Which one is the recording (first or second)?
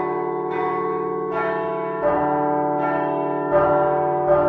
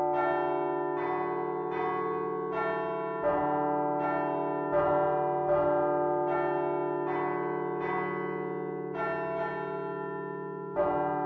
second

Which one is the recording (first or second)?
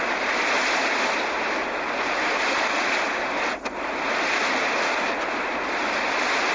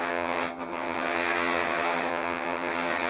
first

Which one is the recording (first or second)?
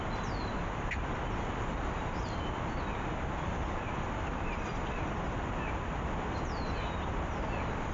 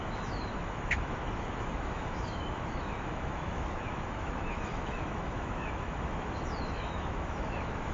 first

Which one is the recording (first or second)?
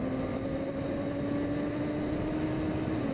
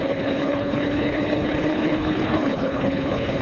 first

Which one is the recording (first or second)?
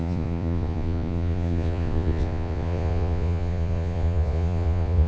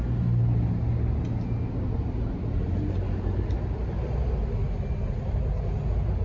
second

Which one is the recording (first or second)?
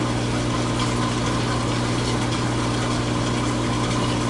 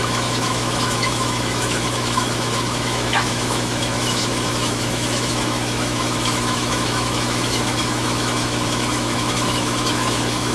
first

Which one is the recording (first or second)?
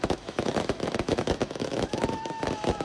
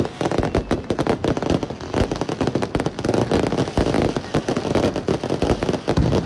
second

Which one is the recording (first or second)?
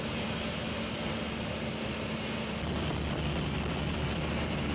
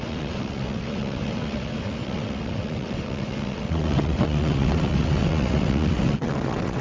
first